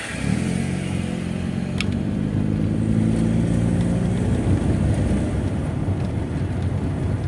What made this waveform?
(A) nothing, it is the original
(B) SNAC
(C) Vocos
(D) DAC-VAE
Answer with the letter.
A